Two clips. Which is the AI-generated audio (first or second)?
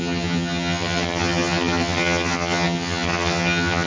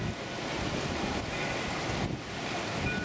first